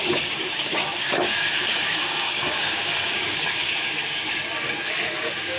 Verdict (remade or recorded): remade